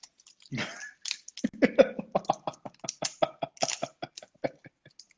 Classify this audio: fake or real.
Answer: real